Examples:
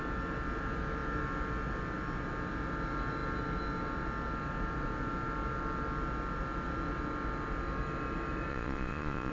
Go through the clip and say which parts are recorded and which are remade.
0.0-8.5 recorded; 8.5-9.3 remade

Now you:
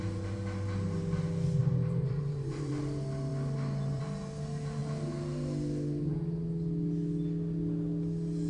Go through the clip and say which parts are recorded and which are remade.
0.0-1.6 recorded; 1.6-2.7 remade; 2.7-8.5 recorded

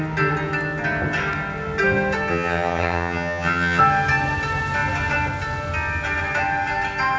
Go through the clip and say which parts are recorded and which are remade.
0.0-2.3 recorded; 2.3-3.8 remade; 3.8-7.2 recorded

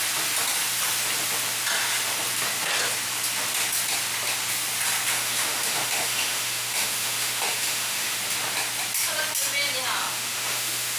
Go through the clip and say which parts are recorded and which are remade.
0.0-5.1 recorded; 5.1-8.2 remade; 8.2-10.0 recorded; 10.0-11.0 remade